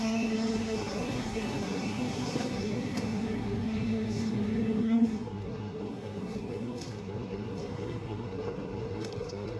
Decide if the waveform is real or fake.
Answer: fake